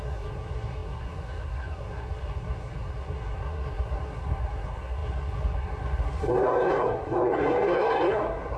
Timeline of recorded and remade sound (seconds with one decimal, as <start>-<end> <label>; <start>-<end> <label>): 0.0-8.6 remade